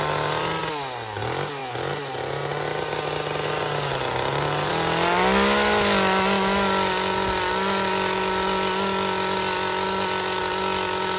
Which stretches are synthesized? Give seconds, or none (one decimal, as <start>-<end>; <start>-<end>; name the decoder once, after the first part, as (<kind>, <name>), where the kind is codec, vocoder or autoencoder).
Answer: none